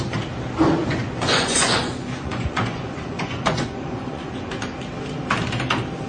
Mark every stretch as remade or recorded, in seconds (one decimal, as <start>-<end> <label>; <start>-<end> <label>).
0.0-0.8 recorded; 0.8-4.5 remade; 4.5-6.1 recorded